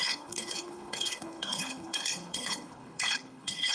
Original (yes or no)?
no